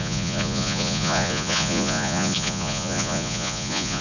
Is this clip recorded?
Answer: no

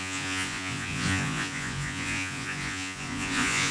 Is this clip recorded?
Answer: no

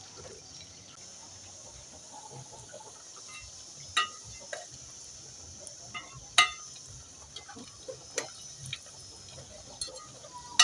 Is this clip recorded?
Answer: yes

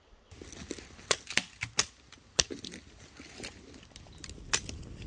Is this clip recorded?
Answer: yes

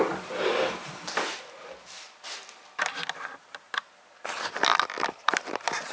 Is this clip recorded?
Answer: yes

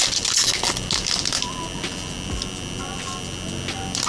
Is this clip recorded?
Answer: yes